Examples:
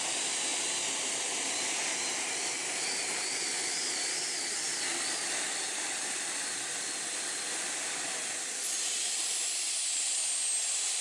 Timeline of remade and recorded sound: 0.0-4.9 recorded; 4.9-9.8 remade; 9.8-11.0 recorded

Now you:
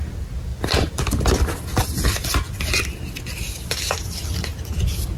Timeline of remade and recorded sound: 0.0-0.5 recorded; 0.5-3.2 remade; 3.2-5.2 recorded

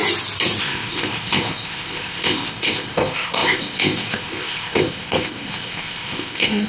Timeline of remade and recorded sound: 0.0-0.6 recorded; 0.6-6.7 remade

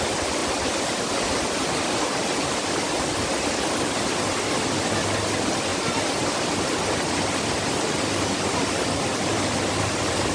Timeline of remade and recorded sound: 0.0-10.3 recorded

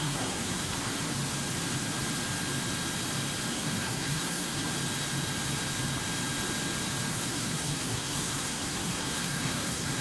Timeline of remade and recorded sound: 0.0-0.7 remade; 0.7-3.5 recorded; 3.5-4.7 remade; 4.7-7.1 recorded; 7.1-10.0 remade

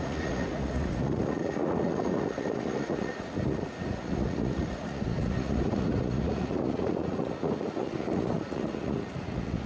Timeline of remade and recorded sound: 0.0-9.7 remade

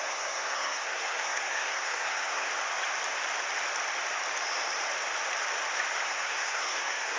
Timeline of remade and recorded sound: 0.0-2.5 remade; 2.5-6.0 recorded; 6.0-7.2 remade

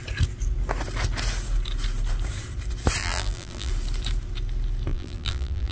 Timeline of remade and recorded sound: 0.0-3.0 recorded; 3.0-3.7 remade; 3.7-4.9 recorded; 4.9-5.7 remade